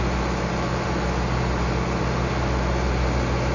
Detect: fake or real real